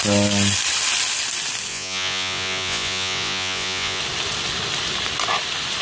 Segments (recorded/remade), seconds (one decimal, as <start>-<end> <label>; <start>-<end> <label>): 0.0-1.7 recorded; 1.7-4.0 remade; 4.0-5.8 recorded